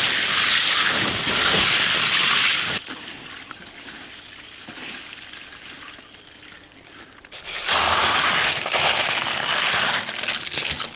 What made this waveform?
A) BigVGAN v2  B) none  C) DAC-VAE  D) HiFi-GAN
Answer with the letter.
B